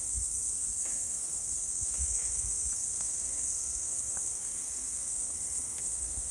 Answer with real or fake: fake